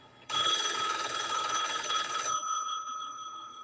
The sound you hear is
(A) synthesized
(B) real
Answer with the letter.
A